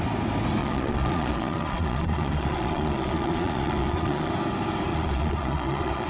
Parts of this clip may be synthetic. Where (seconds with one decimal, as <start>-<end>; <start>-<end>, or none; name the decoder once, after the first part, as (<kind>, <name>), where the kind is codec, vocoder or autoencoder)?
0.6-4.3 (vocoder, Vocos); 4.9-6.1